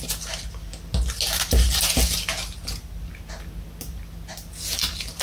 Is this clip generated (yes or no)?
no